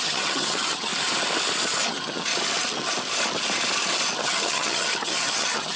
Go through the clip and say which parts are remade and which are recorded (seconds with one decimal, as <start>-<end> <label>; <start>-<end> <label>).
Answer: 0.0-0.9 remade; 0.9-1.9 recorded; 1.9-2.3 remade; 2.3-4.2 recorded; 4.2-5.8 remade